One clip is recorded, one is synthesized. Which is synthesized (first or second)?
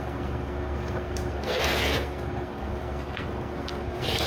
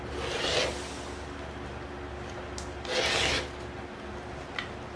first